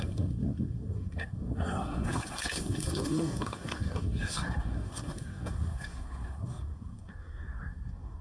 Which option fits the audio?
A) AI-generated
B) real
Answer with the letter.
A